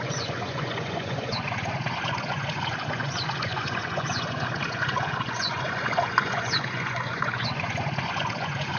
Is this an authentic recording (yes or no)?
no